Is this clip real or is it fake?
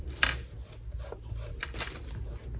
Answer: real